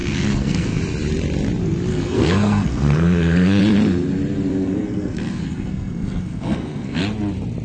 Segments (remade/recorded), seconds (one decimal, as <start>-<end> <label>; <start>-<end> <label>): 0.0-0.8 remade; 0.8-1.9 recorded; 1.9-3.6 remade; 3.6-4.5 recorded; 4.5-7.0 remade; 7.0-7.6 recorded